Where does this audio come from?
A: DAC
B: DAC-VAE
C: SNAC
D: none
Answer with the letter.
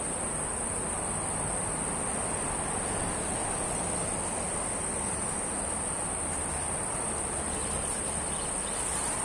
D